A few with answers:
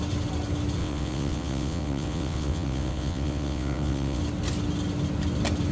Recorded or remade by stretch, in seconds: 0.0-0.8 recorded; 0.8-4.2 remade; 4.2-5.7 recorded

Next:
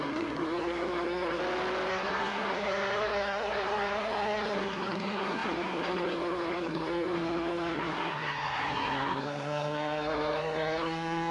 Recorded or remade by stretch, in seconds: 0.0-1.4 remade; 1.4-1.9 recorded; 1.9-11.3 remade

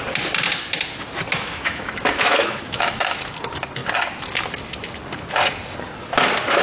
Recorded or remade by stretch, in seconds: 0.0-1.3 recorded; 1.3-3.2 remade; 3.2-6.6 recorded

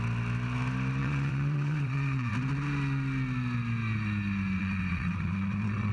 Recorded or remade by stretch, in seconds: 0.0-1.0 recorded; 1.0-2.3 remade; 2.3-4.6 recorded; 4.6-5.9 remade

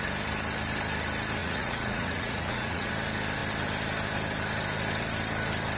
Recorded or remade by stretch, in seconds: 0.0-1.4 recorded; 1.4-2.9 remade; 2.9-5.8 recorded

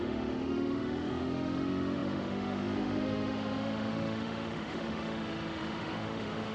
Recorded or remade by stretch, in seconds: 0.0-6.5 remade

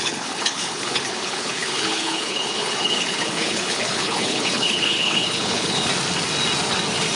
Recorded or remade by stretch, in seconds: 0.0-5.9 remade; 5.9-7.2 recorded